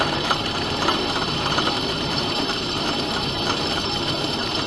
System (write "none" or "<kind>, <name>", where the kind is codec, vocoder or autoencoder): vocoder, BigVGAN v2